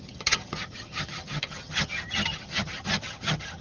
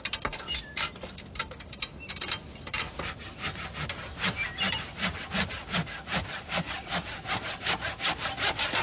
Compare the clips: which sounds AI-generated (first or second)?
first